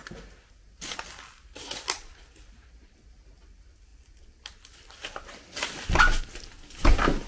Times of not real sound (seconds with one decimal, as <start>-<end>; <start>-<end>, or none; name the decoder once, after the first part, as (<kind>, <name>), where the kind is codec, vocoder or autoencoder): none